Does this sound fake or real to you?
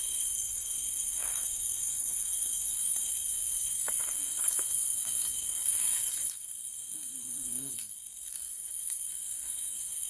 fake